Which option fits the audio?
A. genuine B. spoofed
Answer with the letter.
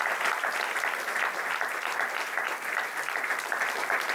A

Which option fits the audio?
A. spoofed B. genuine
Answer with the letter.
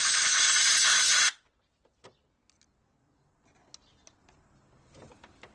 B